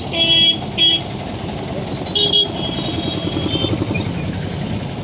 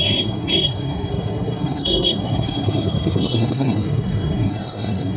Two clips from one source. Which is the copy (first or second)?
second